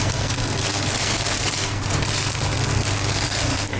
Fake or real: fake